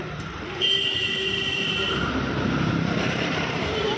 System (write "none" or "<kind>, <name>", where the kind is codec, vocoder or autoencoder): vocoder, BigVGAN v2